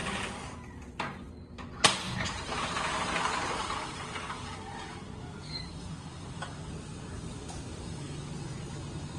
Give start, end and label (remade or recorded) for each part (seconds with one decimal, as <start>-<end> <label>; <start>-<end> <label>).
0.0-3.6 recorded; 3.6-6.7 remade; 6.7-7.7 recorded; 7.7-8.3 remade; 8.3-9.2 recorded